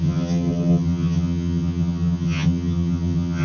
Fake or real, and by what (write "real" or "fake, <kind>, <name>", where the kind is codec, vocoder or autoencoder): fake, vocoder, HiFi-GAN